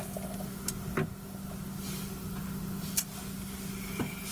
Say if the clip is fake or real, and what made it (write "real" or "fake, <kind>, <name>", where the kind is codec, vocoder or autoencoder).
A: real